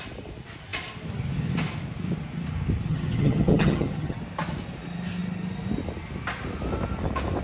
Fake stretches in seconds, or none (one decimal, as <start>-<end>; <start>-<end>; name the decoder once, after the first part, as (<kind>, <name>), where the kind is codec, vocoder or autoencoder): 2.9-4.2 (vocoder, HiFi-GAN)